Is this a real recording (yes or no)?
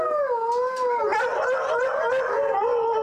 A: yes